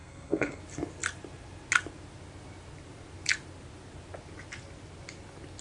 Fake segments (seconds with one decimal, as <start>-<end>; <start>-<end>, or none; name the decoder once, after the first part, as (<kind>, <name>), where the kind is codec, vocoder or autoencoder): 0.0-0.6 (codec, SNAC)